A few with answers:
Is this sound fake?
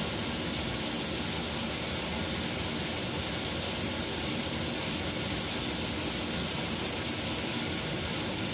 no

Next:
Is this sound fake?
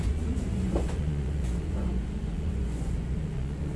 yes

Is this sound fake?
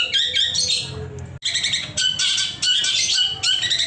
no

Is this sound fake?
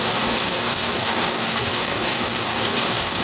yes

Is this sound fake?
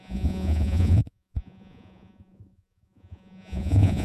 yes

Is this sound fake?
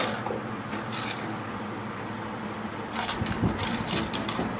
yes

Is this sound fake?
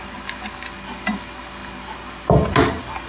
no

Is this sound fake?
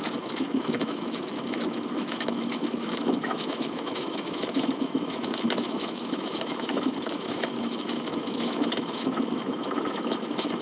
yes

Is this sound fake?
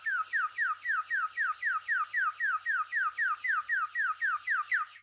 no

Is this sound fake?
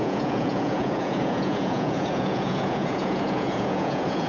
yes